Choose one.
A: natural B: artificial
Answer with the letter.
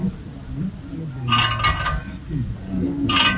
A